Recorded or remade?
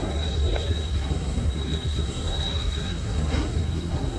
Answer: remade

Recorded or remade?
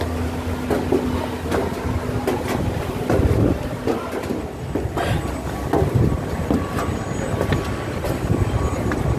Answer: recorded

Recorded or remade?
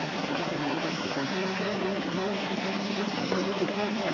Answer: remade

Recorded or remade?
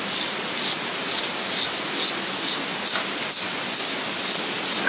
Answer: recorded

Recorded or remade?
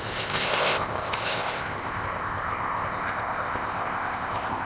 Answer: remade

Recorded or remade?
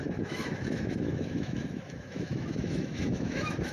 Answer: remade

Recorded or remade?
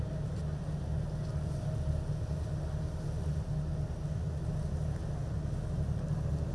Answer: recorded